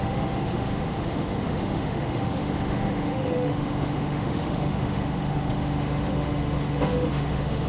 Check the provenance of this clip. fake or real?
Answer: fake